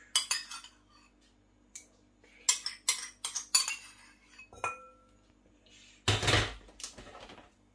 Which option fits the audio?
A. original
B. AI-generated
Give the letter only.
A